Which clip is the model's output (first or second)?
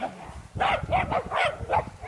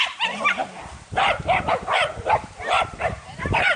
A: second